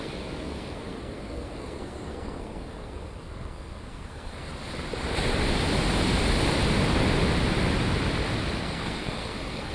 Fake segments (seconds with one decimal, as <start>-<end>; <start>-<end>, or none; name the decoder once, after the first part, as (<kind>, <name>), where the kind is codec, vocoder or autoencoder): 0.0-4.5 (codec, SNAC); 8.6-9.7